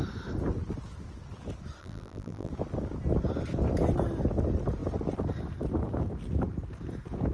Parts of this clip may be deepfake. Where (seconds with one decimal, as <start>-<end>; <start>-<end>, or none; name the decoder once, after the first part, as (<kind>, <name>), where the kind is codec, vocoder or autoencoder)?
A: 1.8-2.5 (vocoder, BigVGAN v2)